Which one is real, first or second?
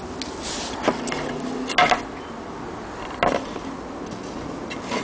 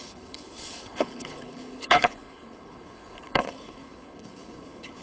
first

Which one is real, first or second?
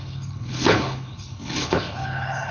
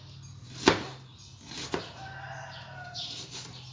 second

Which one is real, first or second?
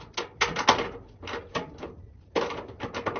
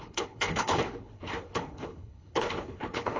first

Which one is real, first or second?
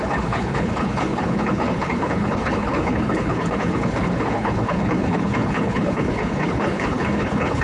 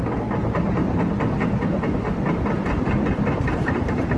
second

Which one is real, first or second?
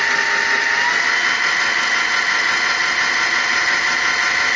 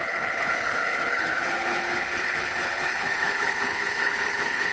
first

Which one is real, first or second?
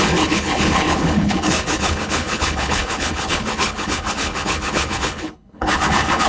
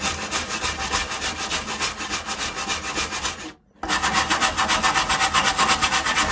second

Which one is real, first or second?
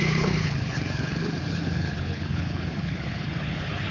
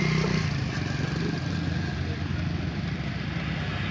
second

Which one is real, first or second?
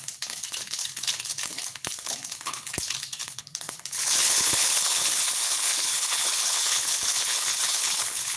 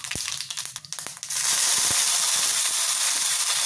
second